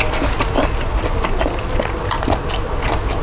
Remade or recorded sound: recorded